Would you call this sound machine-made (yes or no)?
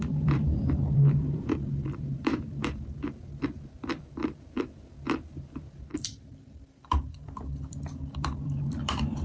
yes